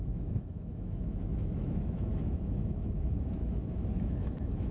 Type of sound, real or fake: fake